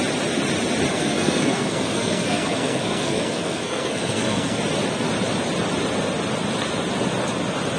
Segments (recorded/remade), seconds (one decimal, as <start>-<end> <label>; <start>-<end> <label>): 0.0-0.9 recorded; 0.9-4.6 remade; 4.6-7.8 recorded